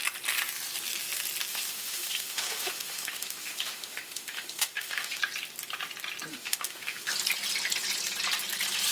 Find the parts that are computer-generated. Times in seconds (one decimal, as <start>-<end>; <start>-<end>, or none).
1.5-5.2; 6.3-7.1